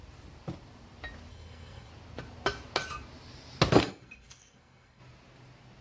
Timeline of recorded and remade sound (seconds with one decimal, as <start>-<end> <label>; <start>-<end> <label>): 0.0-1.3 recorded; 1.3-1.9 remade; 1.9-3.8 recorded; 3.8-5.0 remade; 5.0-5.8 recorded